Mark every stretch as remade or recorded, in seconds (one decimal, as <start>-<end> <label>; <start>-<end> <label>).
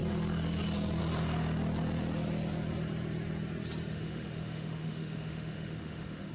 0.0-3.9 recorded; 3.9-6.3 remade